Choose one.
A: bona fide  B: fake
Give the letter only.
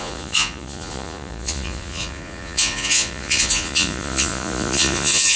B